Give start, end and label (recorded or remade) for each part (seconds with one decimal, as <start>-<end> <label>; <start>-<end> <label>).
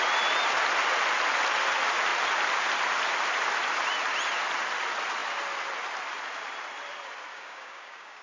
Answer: 0.0-7.3 recorded; 7.3-8.2 remade